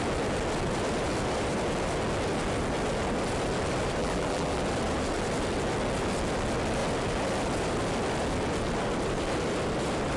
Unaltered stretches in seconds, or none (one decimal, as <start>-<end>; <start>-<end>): 0.0-4.0; 4.6-10.2